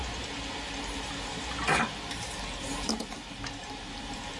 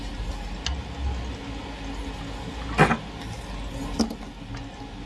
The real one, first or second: second